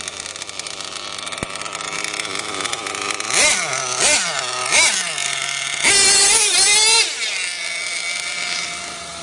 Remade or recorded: recorded